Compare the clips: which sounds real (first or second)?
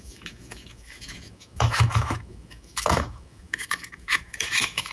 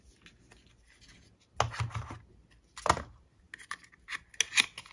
second